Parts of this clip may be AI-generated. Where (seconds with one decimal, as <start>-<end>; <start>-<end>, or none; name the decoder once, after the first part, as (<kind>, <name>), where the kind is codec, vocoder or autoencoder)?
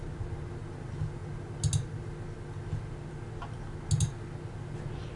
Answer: none